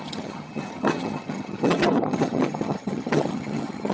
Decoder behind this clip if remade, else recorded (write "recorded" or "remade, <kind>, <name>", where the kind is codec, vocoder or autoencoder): remade, vocoder, HiFi-GAN